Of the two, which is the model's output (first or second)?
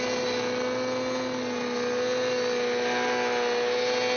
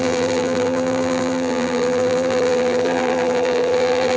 second